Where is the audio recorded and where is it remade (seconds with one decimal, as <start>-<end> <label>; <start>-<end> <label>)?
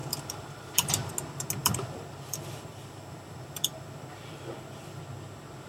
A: 0.0-1.1 remade; 1.1-1.6 recorded; 1.6-5.0 remade; 5.0-5.7 recorded